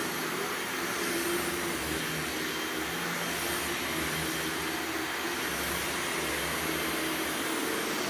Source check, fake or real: real